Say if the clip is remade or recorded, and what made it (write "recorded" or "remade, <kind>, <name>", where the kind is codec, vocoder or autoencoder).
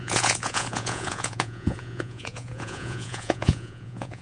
remade, vocoder, Vocos